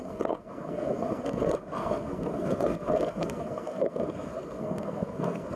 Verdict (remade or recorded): remade